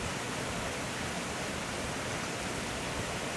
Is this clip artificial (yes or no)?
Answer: no